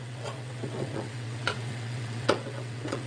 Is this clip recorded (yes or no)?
no